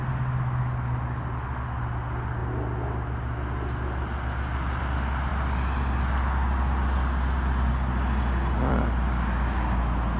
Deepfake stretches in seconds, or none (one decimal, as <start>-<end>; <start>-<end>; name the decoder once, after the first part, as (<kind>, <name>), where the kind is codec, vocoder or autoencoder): none